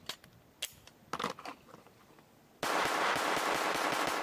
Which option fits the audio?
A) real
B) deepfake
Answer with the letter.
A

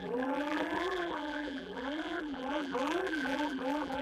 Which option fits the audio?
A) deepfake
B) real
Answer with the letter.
A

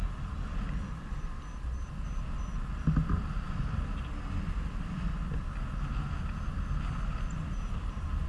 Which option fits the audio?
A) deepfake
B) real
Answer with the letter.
B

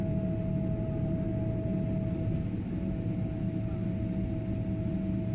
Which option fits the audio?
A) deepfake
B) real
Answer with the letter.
B